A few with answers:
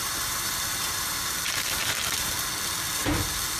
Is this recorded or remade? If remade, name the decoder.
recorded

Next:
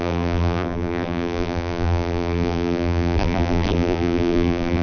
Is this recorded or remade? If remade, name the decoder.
remade, vocoder, BigVGAN v2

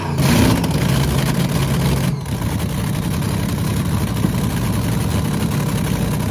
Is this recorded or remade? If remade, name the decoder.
recorded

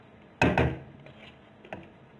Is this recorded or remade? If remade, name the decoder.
recorded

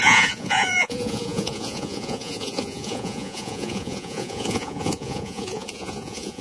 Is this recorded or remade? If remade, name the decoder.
remade, vocoder, Vocos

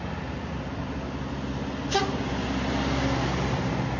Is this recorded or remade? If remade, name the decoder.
recorded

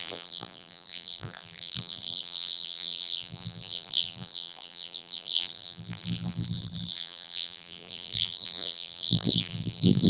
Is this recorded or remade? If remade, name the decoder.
remade, vocoder, BigVGAN v2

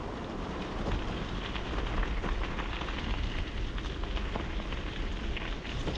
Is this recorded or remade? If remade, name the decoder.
recorded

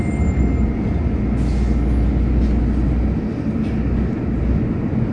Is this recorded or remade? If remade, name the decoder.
recorded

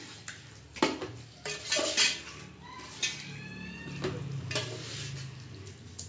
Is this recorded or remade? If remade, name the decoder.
recorded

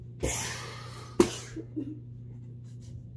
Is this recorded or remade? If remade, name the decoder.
recorded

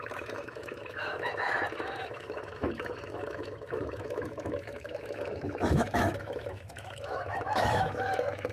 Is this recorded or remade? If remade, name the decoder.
remade, autoencoder, DAC-VAE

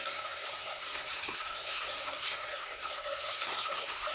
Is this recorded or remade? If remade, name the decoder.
remade, codec, SNAC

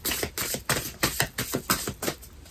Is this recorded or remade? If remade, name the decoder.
recorded